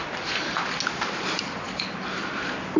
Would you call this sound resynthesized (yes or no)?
no